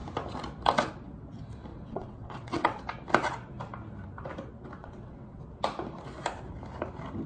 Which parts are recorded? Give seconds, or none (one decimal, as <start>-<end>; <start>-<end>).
0.0-1.7; 2.8-4.8; 5.4-7.3

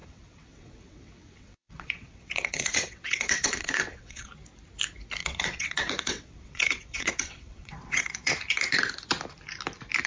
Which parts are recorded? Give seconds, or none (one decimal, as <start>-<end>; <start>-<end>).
4.3-5.2; 8.3-10.1

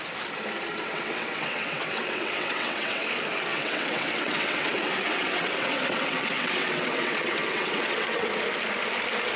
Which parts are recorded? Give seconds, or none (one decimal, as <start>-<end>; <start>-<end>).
0.0-0.7; 3.1-3.5; 8.3-9.4

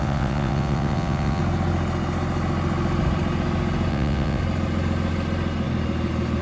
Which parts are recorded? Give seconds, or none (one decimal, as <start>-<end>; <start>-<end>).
1.4-3.9; 4.4-6.4